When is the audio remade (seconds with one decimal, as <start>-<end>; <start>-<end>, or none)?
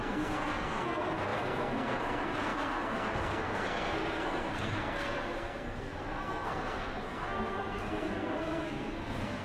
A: 0.0-9.4